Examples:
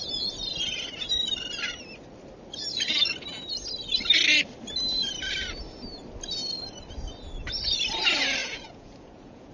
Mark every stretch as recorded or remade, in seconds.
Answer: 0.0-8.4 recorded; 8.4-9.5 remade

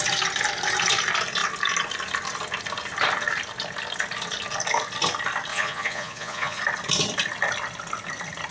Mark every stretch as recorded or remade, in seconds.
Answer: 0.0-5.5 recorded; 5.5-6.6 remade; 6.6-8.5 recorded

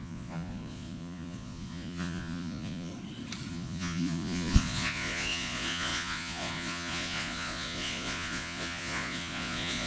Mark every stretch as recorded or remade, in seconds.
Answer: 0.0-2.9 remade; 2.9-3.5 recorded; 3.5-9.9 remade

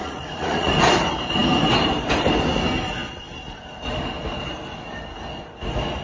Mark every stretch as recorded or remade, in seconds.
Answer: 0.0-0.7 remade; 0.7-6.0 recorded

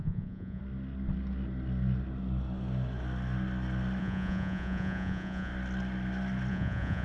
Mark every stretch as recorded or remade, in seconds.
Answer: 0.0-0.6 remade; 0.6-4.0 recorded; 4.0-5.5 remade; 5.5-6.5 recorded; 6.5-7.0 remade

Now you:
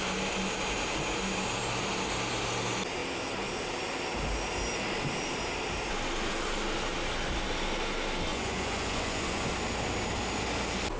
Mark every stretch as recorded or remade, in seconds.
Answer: 0.0-8.3 recorded; 8.3-9.5 remade; 9.5-11.0 recorded

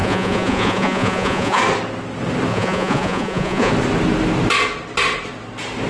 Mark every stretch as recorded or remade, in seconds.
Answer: 0.0-1.6 remade; 1.6-2.5 recorded; 2.5-3.7 remade; 3.7-5.9 recorded